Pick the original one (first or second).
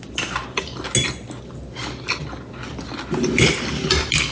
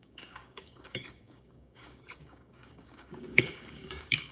first